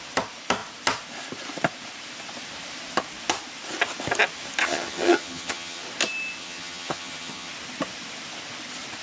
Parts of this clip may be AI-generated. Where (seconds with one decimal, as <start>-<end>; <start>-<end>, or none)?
4.6-5.8; 6.4-7.5